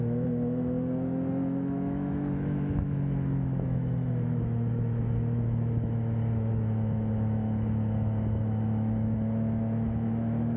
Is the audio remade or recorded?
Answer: remade